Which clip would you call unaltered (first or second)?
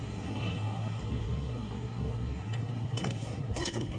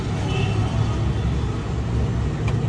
second